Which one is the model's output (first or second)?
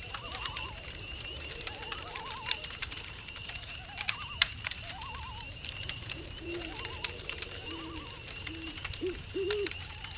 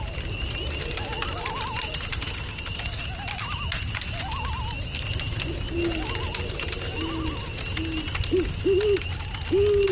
first